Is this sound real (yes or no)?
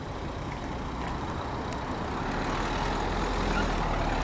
yes